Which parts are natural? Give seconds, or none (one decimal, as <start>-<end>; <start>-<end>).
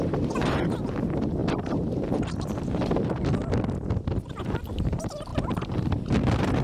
1.4-4.4